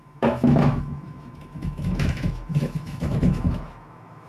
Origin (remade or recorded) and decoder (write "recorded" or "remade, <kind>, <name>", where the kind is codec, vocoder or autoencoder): remade, autoencoder, DAC-VAE